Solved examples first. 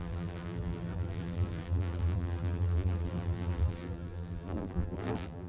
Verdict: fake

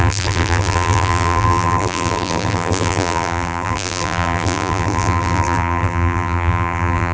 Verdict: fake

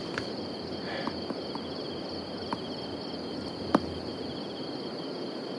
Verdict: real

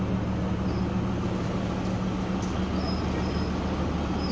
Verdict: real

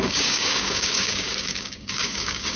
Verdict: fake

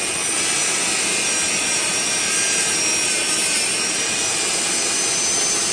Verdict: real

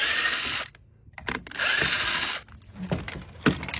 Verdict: real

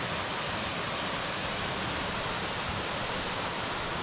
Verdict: real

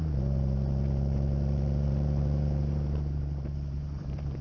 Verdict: fake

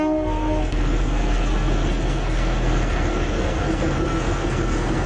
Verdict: fake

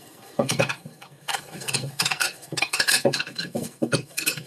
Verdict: fake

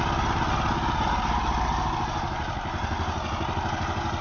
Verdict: real